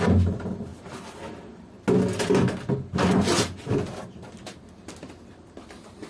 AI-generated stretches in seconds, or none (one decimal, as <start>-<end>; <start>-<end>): none